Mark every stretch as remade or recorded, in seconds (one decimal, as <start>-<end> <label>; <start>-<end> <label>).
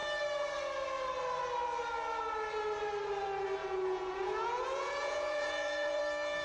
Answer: 0.0-3.6 recorded; 3.6-6.0 remade; 6.0-6.4 recorded